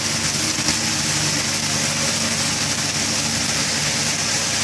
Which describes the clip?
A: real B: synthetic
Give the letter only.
A